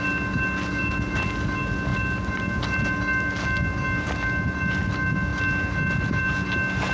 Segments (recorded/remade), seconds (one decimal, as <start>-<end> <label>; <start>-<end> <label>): 0.0-6.9 recorded